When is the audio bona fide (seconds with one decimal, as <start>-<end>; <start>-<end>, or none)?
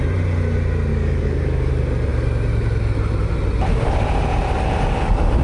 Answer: 0.0-0.9; 1.7-5.4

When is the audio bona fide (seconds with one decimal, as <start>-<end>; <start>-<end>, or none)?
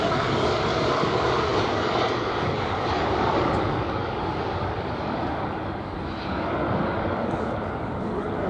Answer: none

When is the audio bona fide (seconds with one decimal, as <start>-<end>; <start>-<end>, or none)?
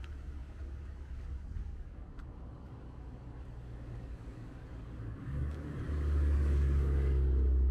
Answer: none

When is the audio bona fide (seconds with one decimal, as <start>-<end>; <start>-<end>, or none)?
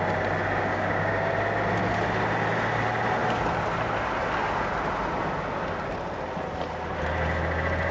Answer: 0.0-0.7; 1.3-7.9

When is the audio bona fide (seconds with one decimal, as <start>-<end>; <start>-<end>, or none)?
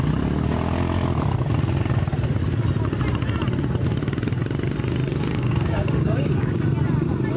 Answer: 0.0-5.1; 6.6-7.4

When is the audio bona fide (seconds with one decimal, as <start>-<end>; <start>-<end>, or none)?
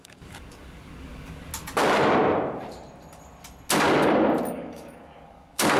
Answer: 1.5-4.5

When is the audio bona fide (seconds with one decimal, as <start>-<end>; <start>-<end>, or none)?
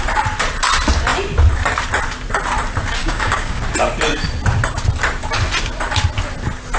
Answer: 0.0-3.0; 3.6-6.8